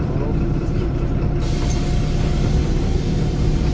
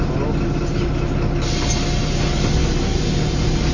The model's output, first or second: first